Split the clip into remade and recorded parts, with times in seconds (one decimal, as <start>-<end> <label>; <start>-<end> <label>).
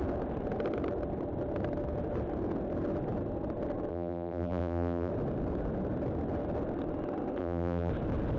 0.0-3.9 recorded; 3.9-5.1 remade; 5.1-7.4 recorded; 7.4-7.9 remade; 7.9-8.4 recorded